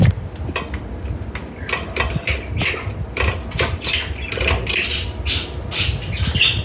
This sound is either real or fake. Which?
real